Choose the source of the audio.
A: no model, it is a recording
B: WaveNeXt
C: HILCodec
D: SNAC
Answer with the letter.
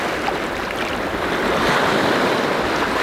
A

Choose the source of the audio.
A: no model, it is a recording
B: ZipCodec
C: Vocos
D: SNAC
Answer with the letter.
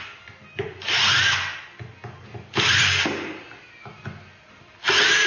A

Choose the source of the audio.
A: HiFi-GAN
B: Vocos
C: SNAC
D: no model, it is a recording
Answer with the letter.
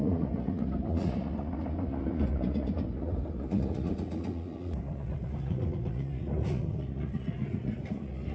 B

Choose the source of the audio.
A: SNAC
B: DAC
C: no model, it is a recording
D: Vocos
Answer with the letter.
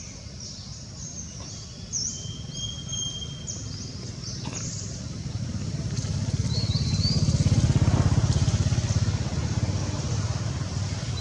C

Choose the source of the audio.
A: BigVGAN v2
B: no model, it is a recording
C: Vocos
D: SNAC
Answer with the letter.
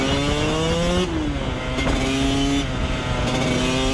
B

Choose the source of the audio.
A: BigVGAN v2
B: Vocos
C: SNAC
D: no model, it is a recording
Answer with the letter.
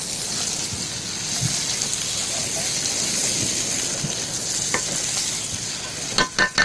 D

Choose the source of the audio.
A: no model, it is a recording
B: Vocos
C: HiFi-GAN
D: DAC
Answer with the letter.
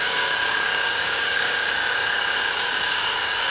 D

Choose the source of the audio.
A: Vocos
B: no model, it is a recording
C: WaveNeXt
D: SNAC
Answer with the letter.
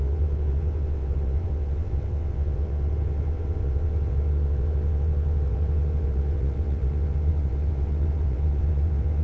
C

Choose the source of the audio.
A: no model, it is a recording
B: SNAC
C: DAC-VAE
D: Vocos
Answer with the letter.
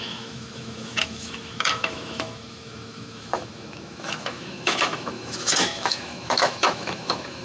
C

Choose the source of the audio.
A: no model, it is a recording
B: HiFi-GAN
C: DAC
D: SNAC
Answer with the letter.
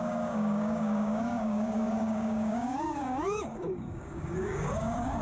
C